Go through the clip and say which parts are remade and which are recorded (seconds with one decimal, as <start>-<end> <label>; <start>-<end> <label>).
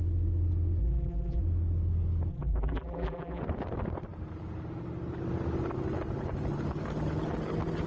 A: 0.0-0.8 recorded; 0.8-1.4 remade; 1.4-2.3 recorded; 2.3-3.4 remade; 3.4-7.9 recorded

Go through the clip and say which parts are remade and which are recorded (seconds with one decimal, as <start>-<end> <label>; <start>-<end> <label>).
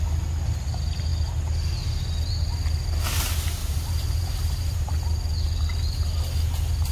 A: 0.0-3.6 recorded; 3.6-4.9 remade; 4.9-6.9 recorded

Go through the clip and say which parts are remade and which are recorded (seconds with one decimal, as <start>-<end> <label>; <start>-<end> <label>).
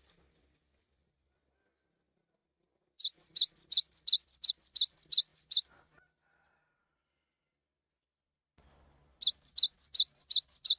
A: 0.0-5.3 remade; 5.3-10.4 recorded; 10.4-10.8 remade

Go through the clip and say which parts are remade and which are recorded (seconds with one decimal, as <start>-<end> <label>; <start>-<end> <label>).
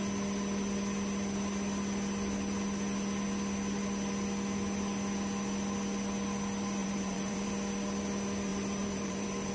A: 0.0-6.8 recorded; 6.8-7.5 remade; 7.5-8.5 recorded; 8.5-9.5 remade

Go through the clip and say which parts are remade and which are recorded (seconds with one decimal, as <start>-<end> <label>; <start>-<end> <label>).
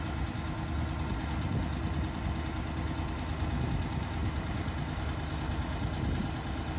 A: 0.0-6.8 recorded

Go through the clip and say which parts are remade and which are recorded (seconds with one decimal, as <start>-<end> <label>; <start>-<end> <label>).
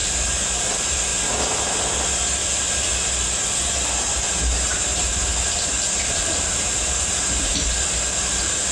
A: 0.0-0.7 recorded; 0.7-1.1 remade; 1.1-4.5 recorded; 4.5-5.3 remade; 5.3-6.0 recorded; 6.0-8.7 remade